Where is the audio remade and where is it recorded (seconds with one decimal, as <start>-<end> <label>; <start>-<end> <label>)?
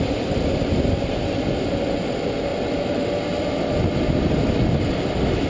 0.0-5.5 recorded